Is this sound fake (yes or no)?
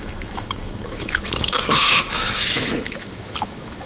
yes